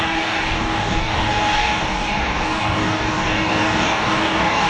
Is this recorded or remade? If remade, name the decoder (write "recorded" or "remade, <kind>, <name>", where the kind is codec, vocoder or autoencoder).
remade, codec, DAC